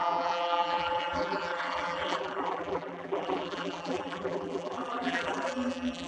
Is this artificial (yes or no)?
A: yes